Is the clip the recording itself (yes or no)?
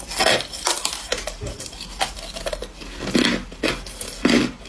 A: yes